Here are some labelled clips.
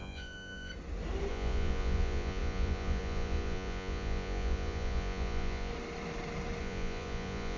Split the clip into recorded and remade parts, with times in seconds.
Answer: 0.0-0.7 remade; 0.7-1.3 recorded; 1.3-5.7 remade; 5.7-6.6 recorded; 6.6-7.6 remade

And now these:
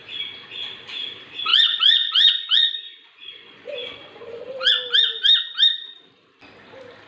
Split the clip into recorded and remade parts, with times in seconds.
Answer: 0.0-1.5 recorded; 1.5-4.7 remade; 4.7-7.1 recorded

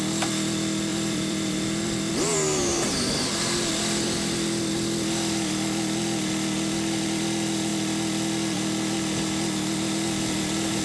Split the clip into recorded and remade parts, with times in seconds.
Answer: 0.0-0.9 recorded; 0.9-2.1 remade; 2.1-10.8 recorded

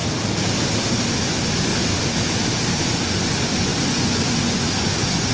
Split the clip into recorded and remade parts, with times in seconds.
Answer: 0.0-1.2 recorded; 1.2-1.7 remade; 1.7-2.7 recorded; 2.7-5.3 remade

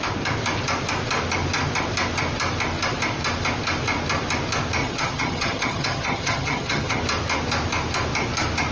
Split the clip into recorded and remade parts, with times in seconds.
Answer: 0.0-4.8 recorded; 4.8-7.0 remade; 7.0-8.7 recorded

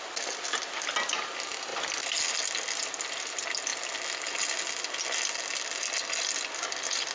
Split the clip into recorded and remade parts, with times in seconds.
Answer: 0.0-7.1 recorded

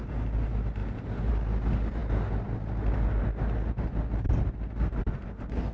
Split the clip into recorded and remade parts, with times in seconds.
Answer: 0.0-5.7 recorded

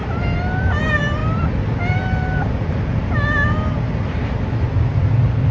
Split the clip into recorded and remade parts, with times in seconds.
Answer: 0.0-5.5 recorded